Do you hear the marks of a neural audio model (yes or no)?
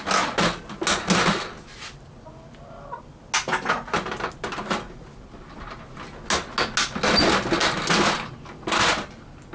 no